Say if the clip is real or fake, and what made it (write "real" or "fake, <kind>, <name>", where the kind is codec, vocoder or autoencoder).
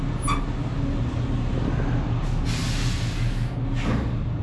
real